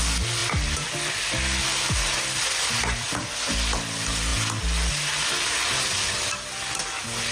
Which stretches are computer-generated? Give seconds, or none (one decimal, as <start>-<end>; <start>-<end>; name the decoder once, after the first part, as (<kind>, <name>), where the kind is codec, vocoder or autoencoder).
none